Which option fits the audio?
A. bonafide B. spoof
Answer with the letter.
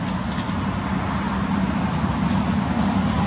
A